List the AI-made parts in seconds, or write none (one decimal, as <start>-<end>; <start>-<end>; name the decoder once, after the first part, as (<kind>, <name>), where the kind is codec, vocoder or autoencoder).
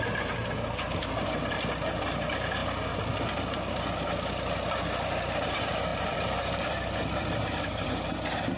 5.9-7.9 (vocoder, BigVGAN v2)